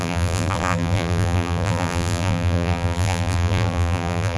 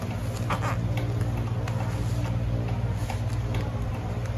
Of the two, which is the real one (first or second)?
second